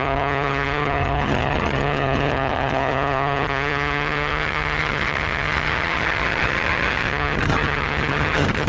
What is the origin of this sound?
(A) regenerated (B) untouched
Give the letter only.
A